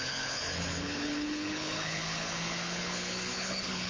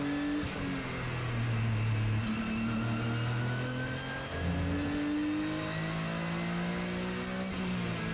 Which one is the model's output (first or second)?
first